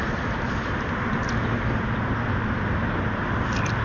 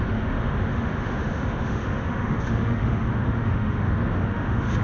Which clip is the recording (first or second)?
first